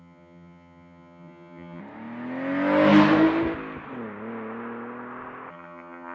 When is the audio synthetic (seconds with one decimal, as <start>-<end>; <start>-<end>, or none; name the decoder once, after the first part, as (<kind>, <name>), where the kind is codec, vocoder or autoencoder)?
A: 0.0-1.8 (vocoder, HiFi-GAN); 5.5-6.1